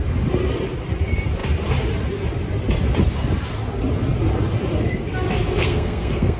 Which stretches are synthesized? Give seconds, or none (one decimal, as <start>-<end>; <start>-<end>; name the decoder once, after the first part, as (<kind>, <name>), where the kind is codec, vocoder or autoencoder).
5.6-6.4 (codec, SNAC)